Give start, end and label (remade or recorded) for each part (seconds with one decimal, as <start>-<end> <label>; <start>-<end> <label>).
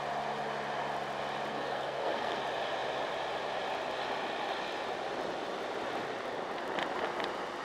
0.0-1.5 recorded; 1.5-2.4 remade; 2.4-7.6 recorded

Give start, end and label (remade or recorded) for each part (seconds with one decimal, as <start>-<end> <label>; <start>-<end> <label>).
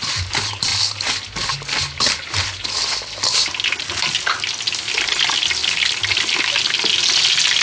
0.0-7.6 recorded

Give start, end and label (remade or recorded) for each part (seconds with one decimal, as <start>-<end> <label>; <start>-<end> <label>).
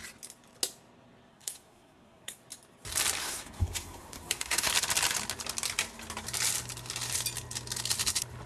0.0-1.3 recorded; 1.3-2.4 remade; 2.4-3.2 recorded; 3.2-4.7 remade; 4.7-8.5 recorded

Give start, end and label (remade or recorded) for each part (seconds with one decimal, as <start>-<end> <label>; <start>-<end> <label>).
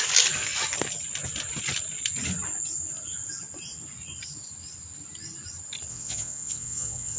0.0-5.9 recorded; 5.9-7.2 remade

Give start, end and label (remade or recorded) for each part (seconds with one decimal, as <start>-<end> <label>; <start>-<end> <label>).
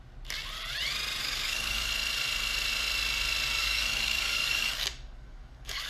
0.0-1.2 recorded; 1.2-1.9 remade; 1.9-3.6 recorded; 3.6-5.9 remade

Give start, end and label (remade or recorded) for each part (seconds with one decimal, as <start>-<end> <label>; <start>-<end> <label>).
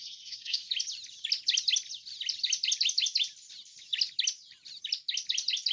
0.0-0.7 remade; 0.7-5.7 recorded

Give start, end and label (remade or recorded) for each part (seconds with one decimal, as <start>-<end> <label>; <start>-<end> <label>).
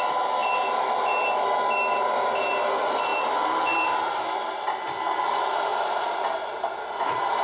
0.0-7.4 recorded